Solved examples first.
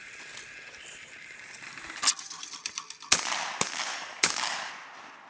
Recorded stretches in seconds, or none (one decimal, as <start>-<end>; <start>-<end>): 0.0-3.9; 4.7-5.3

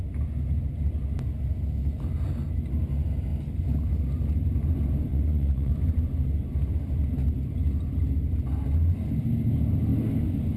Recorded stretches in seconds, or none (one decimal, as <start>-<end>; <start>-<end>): 0.0-5.1; 5.7-10.6

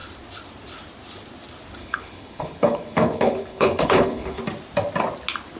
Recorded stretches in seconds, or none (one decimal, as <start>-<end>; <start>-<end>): 0.0-1.8; 4.4-5.6

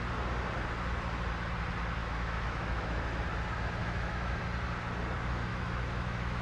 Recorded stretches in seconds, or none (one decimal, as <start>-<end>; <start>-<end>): 0.0-2.0; 3.2-3.8; 4.4-5.5